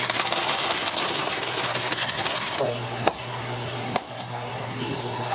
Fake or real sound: fake